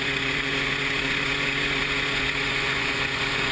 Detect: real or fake fake